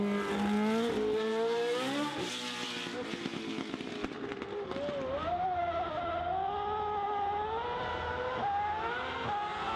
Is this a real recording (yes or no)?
yes